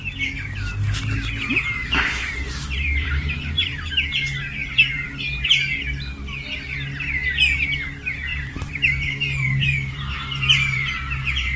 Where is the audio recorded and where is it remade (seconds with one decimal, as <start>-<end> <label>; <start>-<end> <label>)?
0.0-1.8 recorded; 1.8-3.9 remade; 3.9-4.6 recorded; 4.6-5.1 remade; 5.1-8.3 recorded; 8.3-11.6 remade